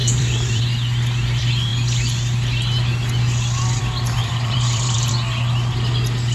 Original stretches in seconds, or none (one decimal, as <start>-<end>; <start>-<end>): 0.6-4.2; 5.1-6.3